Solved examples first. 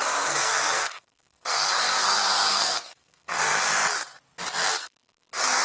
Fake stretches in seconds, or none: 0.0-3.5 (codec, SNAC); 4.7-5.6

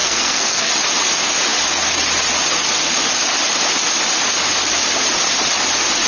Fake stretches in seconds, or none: 0.0-0.7 (codec, SNAC)

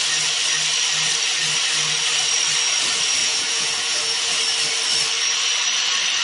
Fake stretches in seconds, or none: 3.2-4.4 (vocoder, Vocos)

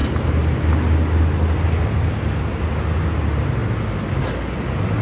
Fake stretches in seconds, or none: none